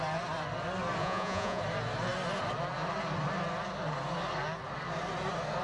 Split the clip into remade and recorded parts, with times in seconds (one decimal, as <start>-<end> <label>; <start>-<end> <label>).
0.0-1.0 recorded; 1.0-1.6 remade; 1.6-5.6 recorded